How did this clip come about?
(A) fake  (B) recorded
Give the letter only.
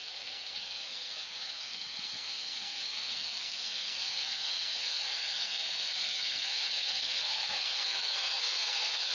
A